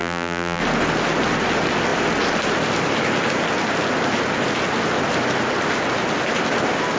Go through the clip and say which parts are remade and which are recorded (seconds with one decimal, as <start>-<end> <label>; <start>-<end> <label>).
0.0-0.6 remade; 0.6-7.0 recorded